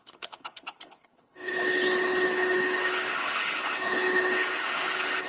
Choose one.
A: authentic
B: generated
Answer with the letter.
B